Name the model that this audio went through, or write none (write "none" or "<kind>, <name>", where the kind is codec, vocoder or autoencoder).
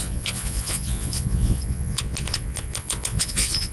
vocoder, Vocos